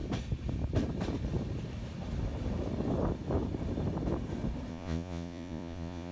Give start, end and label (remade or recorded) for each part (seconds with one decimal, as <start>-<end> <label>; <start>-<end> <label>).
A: 0.0-4.7 recorded; 4.7-6.1 remade